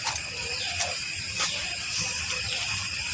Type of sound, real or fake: real